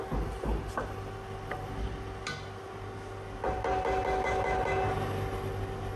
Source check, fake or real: real